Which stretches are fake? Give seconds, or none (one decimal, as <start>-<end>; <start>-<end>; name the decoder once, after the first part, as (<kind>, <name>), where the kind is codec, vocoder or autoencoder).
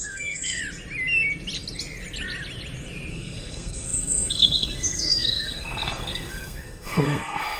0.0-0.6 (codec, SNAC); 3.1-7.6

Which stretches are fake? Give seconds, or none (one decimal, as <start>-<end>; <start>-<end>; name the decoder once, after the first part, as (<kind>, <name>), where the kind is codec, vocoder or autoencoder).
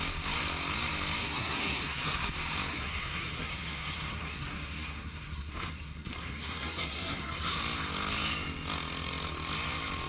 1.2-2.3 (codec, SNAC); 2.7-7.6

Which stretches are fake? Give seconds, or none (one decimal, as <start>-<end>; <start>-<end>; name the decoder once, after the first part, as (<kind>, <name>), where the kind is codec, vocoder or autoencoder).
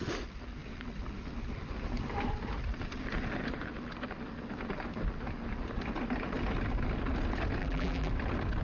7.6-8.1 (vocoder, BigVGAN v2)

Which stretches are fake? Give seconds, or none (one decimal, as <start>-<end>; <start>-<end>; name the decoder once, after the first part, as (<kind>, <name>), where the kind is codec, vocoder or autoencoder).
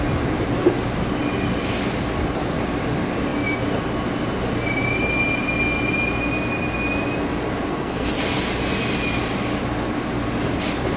7.7-8.2 (codec, SNAC)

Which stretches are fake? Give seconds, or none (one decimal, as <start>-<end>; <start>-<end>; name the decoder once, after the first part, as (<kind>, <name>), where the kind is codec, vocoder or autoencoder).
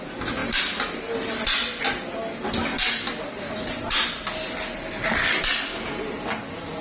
none